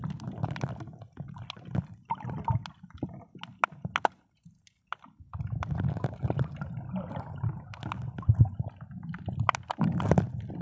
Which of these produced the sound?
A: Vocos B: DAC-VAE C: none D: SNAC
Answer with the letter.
C